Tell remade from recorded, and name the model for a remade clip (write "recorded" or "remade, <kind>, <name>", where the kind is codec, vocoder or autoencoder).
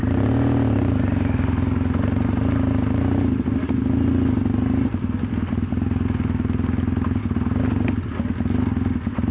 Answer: recorded